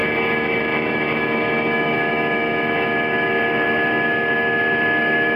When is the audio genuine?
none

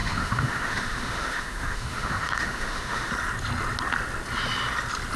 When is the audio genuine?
3.1-5.2

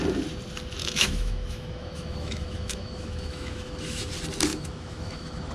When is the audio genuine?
0.0-0.8; 4.1-4.5

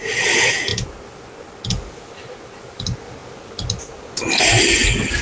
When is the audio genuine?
0.0-5.2

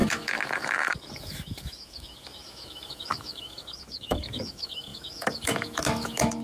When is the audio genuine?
none

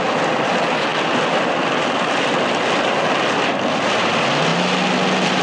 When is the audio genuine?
0.0-5.4

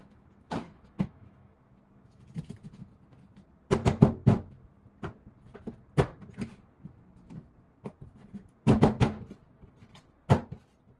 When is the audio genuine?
2.3-11.0